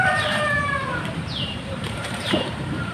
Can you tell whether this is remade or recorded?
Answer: remade